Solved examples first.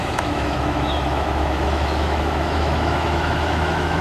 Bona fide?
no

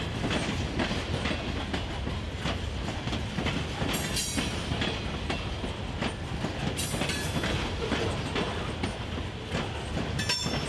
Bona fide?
yes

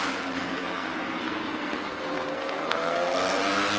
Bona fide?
no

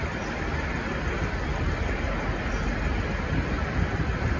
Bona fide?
yes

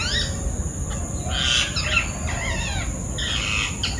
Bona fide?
yes